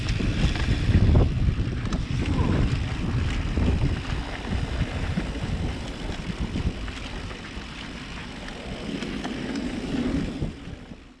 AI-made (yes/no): no